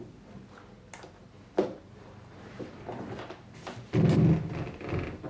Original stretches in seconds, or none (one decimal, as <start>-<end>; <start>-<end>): 0.0-1.2; 3.9-5.3